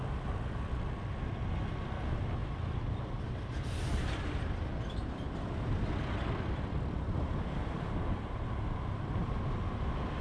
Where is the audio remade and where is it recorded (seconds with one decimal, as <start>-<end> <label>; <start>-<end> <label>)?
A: 0.0-5.0 recorded; 5.0-8.2 remade; 8.2-10.2 recorded